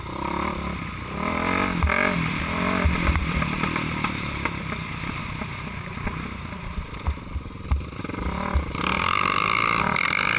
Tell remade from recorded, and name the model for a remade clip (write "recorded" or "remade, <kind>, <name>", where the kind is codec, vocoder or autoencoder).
recorded